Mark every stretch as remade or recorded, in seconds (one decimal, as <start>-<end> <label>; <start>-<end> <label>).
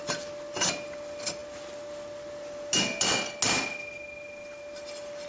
0.0-5.3 recorded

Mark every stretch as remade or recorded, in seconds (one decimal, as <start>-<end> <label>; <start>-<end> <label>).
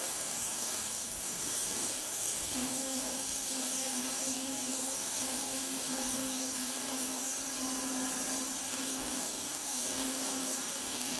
0.0-7.4 remade; 7.4-8.7 recorded; 8.7-11.2 remade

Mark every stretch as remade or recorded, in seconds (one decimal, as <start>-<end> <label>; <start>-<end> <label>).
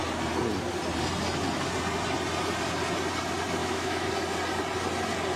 0.0-3.6 recorded; 3.6-4.1 remade; 4.1-5.4 recorded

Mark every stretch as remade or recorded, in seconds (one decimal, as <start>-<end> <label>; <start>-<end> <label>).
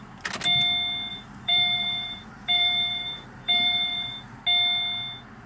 0.0-1.1 recorded; 1.1-4.4 remade; 4.4-5.5 recorded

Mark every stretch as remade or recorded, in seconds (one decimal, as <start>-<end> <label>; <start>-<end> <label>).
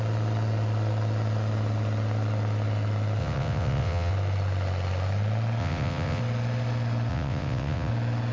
0.0-3.2 recorded; 3.2-4.1 remade; 4.1-5.6 recorded; 5.6-6.2 remade; 6.2-7.1 recorded; 7.1-7.9 remade; 7.9-8.3 recorded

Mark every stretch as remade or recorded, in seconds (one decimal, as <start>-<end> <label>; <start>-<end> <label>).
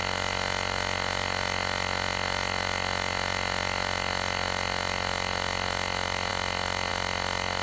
0.0-7.6 recorded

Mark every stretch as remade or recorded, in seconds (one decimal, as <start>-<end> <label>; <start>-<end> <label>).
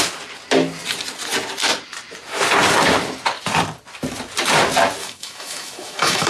0.0-5.0 recorded; 5.0-6.3 remade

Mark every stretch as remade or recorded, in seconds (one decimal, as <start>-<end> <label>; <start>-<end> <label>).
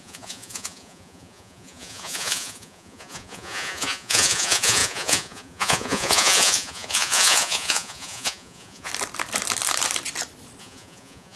0.0-8.9 remade; 8.9-10.6 recorded; 10.6-11.4 remade